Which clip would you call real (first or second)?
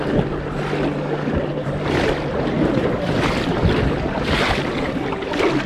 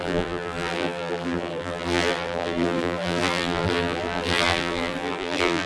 first